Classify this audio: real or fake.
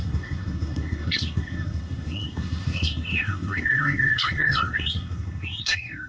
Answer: fake